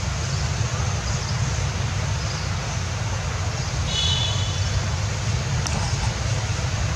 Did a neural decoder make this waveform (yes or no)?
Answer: no